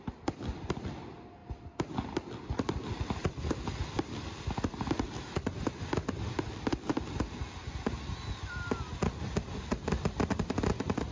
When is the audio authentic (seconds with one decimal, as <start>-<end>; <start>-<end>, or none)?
0.0-11.1

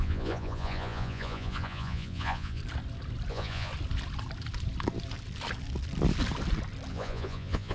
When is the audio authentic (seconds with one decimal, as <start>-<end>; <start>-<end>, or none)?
2.6-3.3; 3.7-6.9

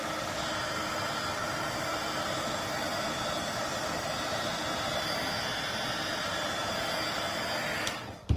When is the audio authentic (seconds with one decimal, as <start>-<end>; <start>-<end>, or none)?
0.0-6.6; 7.2-8.4

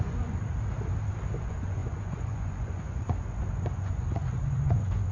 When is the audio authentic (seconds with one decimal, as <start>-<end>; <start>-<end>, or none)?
0.4-1.4

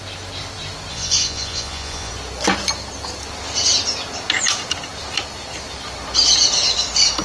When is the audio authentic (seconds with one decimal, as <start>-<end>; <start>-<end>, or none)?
0.0-0.9; 2.1-7.2

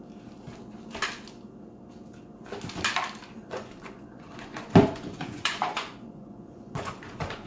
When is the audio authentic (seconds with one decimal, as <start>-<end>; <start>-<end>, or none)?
0.0-3.4